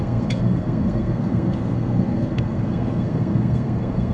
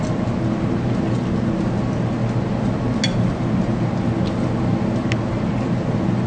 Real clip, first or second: second